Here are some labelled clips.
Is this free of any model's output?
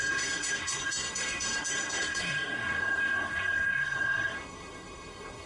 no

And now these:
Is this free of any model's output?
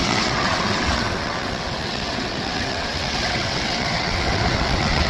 no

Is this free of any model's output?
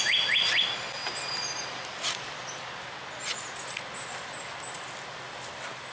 yes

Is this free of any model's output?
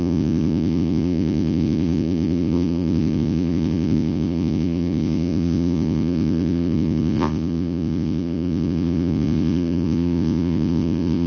no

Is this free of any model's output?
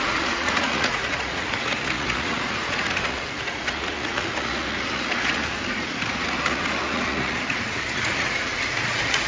no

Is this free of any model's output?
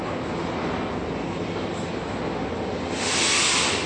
yes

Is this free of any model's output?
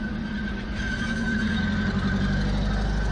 yes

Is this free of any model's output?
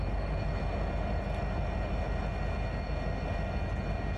yes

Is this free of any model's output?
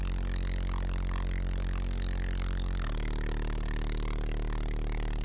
yes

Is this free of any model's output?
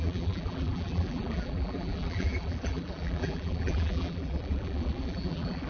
no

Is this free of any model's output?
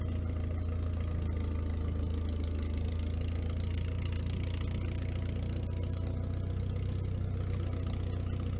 yes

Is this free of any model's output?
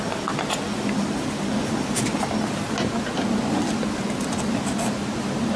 yes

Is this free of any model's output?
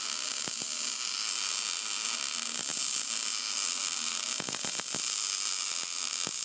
yes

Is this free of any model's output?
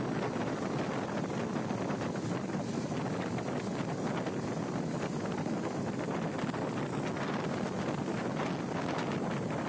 yes